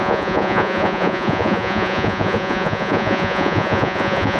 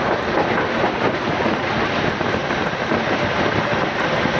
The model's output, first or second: first